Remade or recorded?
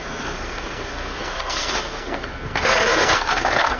remade